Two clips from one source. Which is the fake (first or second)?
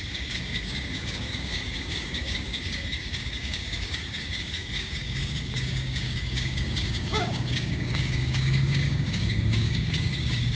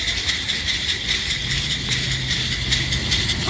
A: first